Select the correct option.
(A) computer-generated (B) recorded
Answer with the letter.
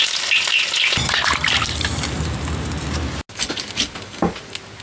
B